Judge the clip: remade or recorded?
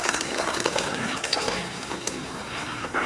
remade